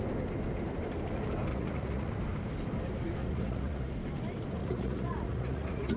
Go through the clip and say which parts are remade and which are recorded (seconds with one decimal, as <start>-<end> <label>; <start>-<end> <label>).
0.0-1.5 recorded; 1.5-2.1 remade; 2.1-3.2 recorded; 3.2-3.9 remade; 3.9-4.6 recorded; 4.6-6.0 remade